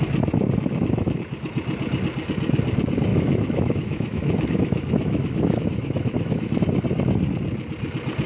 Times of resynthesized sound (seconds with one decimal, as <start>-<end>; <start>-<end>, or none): 3.1-6.6